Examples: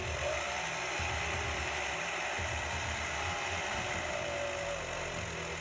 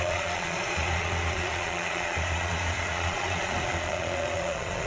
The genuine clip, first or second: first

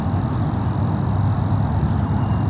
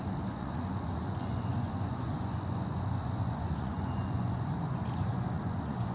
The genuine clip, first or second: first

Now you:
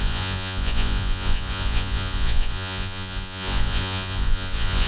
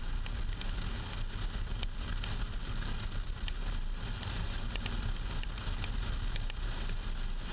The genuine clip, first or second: second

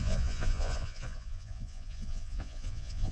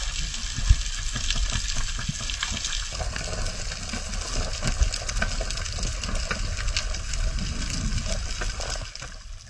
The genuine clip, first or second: second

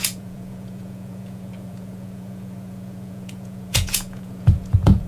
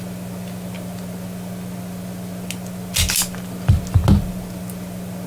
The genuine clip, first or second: second